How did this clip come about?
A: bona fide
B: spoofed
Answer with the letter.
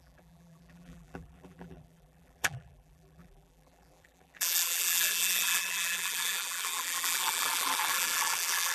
B